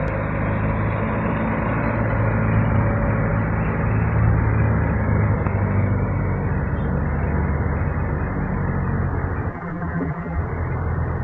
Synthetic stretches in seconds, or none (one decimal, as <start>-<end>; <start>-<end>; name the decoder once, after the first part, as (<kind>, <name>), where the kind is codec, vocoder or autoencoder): 9.5-10.4 (vocoder, BigVGAN v2)